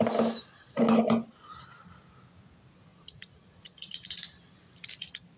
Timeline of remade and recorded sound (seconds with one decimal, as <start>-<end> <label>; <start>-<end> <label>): 0.0-2.9 recorded; 2.9-3.9 remade; 3.9-5.4 recorded